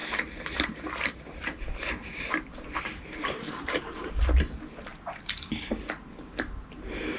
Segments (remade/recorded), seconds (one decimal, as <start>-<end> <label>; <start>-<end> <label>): 0.0-4.1 remade; 4.1-7.2 recorded